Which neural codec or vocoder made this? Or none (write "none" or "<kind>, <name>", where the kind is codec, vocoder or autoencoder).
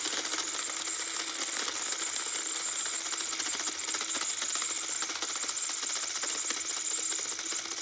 none